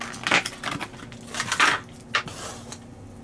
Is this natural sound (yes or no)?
yes